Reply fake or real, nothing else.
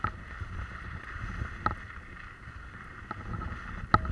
real